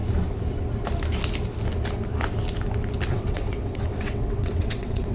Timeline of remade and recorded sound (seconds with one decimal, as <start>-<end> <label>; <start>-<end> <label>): 0.0-3.1 recorded; 3.1-5.1 remade

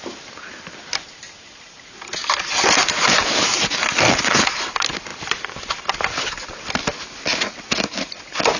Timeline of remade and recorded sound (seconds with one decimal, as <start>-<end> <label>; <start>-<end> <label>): 0.0-2.2 recorded; 2.2-2.8 remade; 2.8-5.1 recorded; 5.1-5.7 remade; 5.7-8.6 recorded

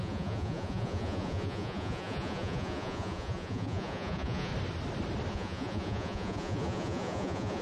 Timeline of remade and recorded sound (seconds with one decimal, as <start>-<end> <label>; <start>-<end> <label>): 0.0-4.5 remade; 4.5-5.3 recorded; 5.3-7.6 remade

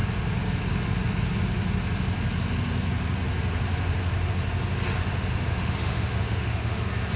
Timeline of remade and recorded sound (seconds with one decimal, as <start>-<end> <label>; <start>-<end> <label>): 0.0-5.0 recorded; 5.0-6.8 remade; 6.8-7.2 recorded

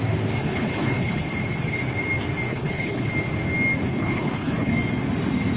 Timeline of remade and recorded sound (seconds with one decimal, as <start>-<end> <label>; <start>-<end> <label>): 0.0-0.4 recorded; 0.4-1.3 remade; 1.3-2.5 recorded; 2.5-3.1 remade; 3.1-3.9 recorded; 3.9-4.7 remade; 4.7-5.6 recorded

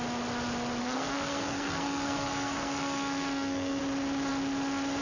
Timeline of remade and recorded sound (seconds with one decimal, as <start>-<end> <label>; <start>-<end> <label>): 0.0-0.8 recorded; 0.8-3.8 remade; 3.8-5.0 recorded

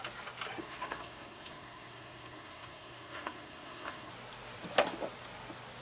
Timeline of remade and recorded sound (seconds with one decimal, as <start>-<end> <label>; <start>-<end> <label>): 0.0-0.6 recorded; 0.6-4.1 remade; 4.1-5.8 recorded